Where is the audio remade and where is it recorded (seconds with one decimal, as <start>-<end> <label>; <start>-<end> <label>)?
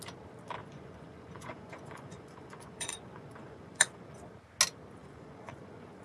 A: 0.0-0.6 recorded; 0.6-4.2 remade; 4.2-5.0 recorded; 5.0-6.0 remade